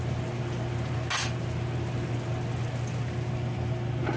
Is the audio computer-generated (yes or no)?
no